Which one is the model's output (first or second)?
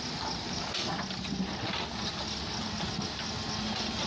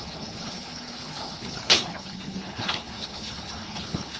second